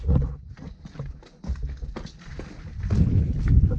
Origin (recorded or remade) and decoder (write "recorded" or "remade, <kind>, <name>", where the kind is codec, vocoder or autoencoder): recorded